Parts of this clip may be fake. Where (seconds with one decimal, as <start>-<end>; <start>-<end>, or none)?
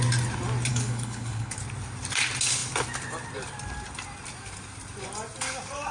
0.7-1.6